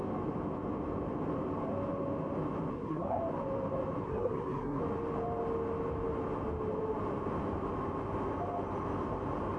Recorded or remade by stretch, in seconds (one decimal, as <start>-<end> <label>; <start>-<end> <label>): 0.0-2.7 recorded; 2.7-3.2 remade; 3.2-4.0 recorded; 4.0-4.8 remade; 4.8-9.6 recorded